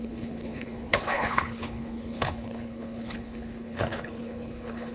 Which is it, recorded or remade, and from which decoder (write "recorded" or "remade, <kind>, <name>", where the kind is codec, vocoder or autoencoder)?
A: remade, codec, HILCodec